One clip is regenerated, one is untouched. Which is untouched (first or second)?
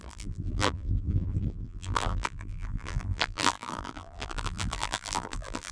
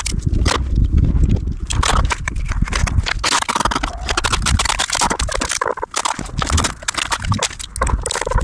second